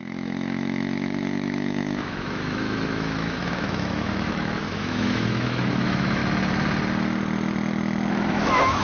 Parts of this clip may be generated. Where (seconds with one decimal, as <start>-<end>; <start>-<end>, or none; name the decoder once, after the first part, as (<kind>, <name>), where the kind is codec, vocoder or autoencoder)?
0.0-6.2 (autoencoder, DAC-VAE); 8.1-8.8